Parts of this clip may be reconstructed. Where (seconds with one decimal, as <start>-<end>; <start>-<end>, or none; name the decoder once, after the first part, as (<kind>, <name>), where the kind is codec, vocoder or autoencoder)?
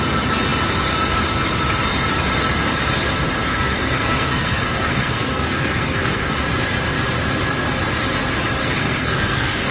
3.5-6.4 (codec, SNAC); 8.6-9.7